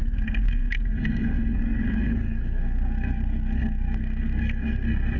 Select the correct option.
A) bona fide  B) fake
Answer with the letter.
B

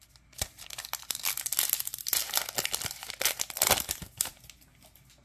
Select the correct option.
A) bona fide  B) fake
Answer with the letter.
A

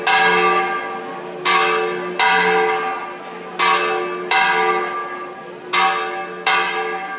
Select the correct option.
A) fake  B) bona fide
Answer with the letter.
B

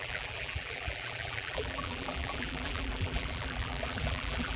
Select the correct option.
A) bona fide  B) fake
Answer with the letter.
B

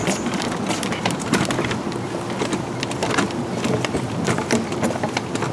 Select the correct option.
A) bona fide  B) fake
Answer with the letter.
B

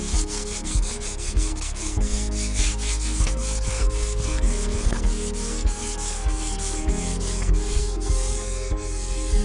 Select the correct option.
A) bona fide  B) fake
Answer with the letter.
B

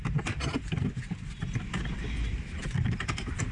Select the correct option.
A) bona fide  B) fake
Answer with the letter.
B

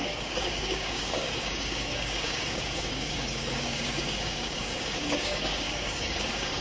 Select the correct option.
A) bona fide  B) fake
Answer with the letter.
B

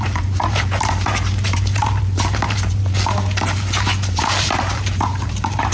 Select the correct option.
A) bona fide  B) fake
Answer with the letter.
B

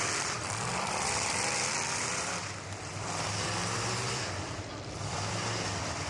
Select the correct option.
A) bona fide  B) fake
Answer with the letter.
B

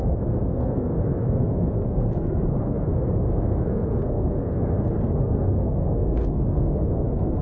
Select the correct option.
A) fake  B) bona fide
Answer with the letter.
A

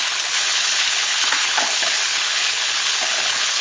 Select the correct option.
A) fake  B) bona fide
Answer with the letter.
A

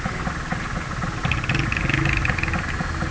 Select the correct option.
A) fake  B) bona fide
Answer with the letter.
B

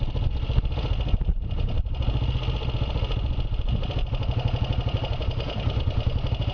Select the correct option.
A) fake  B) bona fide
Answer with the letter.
B